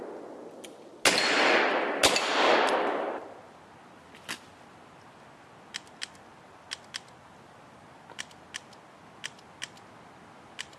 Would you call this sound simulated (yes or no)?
no